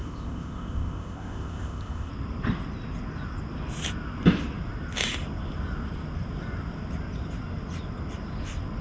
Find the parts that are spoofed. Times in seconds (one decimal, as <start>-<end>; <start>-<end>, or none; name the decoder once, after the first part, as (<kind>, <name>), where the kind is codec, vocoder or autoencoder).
0.0-2.1 (codec, ZipCodec)